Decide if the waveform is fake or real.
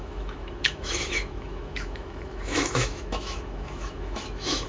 fake